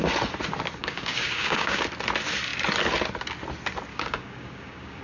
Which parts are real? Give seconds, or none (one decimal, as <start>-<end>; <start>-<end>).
0.0-0.8; 1.8-3.9